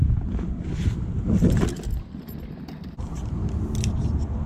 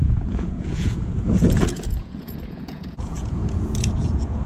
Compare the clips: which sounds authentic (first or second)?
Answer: first